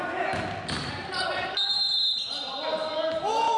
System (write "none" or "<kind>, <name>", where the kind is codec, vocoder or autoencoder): none